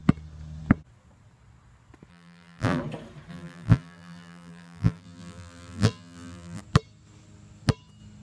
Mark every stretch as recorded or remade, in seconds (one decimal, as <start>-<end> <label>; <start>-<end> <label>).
0.0-2.1 recorded; 2.1-2.8 remade; 2.8-3.3 recorded; 3.3-6.6 remade; 6.6-8.2 recorded